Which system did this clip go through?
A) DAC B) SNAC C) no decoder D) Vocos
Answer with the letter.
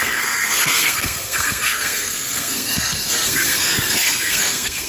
B